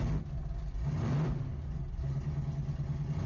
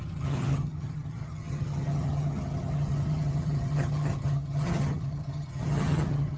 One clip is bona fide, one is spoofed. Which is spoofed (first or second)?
second